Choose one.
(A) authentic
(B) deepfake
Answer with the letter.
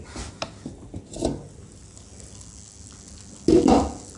A